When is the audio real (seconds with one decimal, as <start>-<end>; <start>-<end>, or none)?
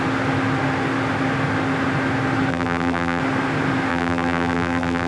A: 0.0-2.5; 3.2-3.9